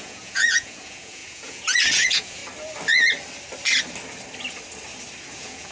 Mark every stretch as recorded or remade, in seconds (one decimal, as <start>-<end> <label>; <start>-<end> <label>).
0.0-2.4 remade; 2.4-5.3 recorded; 5.3-5.7 remade